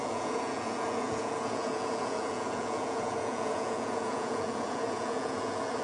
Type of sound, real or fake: fake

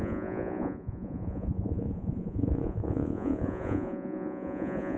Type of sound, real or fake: fake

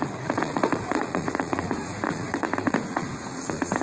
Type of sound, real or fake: fake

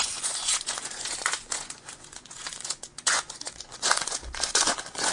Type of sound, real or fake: fake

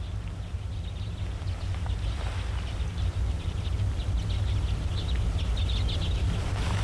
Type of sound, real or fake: real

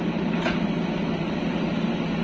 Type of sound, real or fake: real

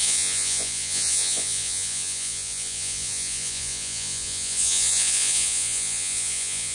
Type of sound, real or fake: fake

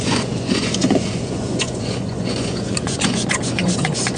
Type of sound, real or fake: fake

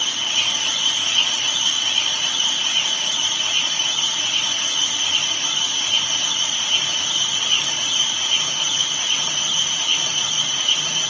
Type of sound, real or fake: fake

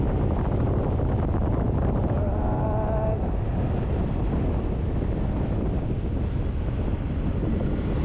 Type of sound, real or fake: real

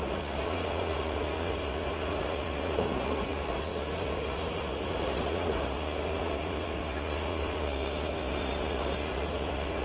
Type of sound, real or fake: fake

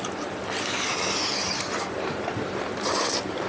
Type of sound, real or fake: real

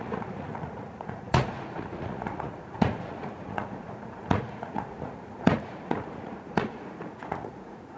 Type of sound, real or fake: fake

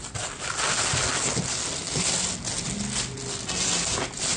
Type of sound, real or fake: real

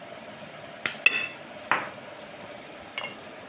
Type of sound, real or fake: real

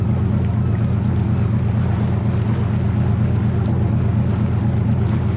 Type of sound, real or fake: real